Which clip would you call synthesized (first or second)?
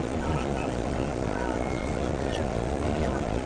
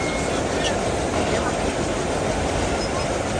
first